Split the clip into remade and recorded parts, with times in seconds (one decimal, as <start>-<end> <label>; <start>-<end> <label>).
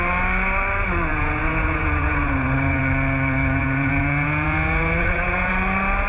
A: 0.0-1.1 recorded; 1.1-2.8 remade; 2.8-3.6 recorded; 3.6-5.5 remade; 5.5-6.1 recorded